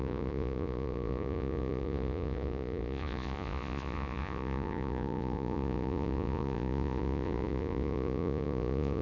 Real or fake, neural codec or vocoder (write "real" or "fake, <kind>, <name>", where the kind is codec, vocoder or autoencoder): fake, vocoder, Vocos